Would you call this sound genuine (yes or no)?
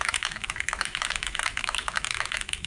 no